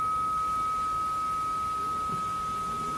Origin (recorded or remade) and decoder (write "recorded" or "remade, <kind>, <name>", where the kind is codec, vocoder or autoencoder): recorded